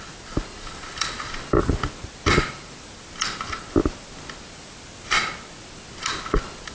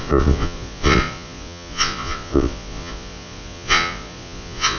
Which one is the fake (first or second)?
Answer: second